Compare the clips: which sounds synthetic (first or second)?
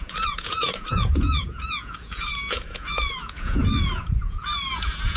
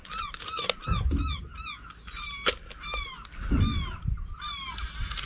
first